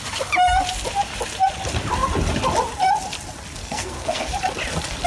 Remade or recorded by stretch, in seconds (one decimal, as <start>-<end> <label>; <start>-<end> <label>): 0.0-3.6 recorded; 3.6-4.3 remade; 4.3-5.1 recorded

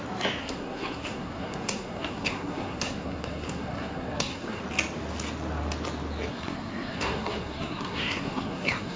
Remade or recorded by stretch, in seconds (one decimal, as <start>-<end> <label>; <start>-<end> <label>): 0.0-0.4 recorded; 0.4-4.6 remade; 4.6-6.3 recorded; 6.3-9.0 remade

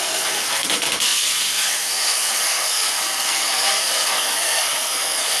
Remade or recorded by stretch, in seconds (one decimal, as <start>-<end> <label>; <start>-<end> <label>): 0.0-5.4 remade

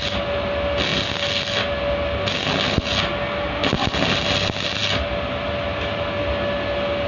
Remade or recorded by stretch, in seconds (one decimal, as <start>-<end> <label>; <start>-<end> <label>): 0.0-7.1 recorded

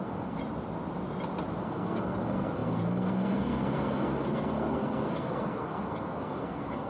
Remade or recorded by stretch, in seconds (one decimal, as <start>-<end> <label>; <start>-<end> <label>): 0.0-0.4 remade; 0.4-1.6 recorded; 1.6-6.9 remade

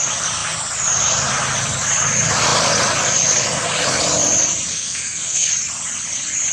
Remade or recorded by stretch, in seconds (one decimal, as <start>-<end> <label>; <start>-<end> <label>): 0.0-4.7 recorded; 4.7-5.5 remade; 5.5-6.5 recorded

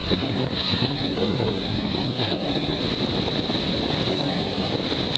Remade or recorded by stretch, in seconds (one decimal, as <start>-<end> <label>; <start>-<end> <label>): 0.0-2.8 remade; 2.8-4.1 recorded; 4.1-4.7 remade; 4.7-5.2 recorded

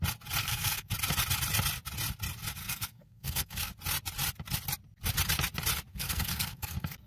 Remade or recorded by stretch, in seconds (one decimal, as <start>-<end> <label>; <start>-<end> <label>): 0.0-0.4 recorded; 0.4-0.9 remade; 0.9-2.6 recorded; 2.6-3.7 remade; 3.7-5.9 recorded; 5.9-7.1 remade